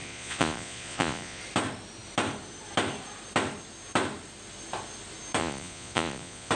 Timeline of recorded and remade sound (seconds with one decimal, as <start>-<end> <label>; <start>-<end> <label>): 0.0-1.4 remade; 1.4-5.4 recorded; 5.4-6.5 remade